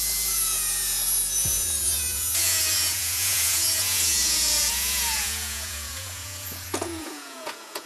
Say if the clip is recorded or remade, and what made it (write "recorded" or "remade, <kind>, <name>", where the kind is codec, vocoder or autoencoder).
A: remade, vocoder, Vocos